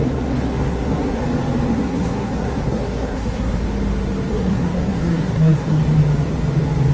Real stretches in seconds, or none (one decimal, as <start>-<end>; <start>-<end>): 1.2-1.7; 3.6-4.3; 5.8-6.9